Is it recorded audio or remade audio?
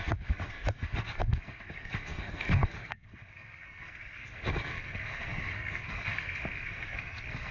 remade